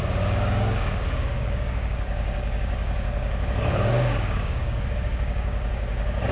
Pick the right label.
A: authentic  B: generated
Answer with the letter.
B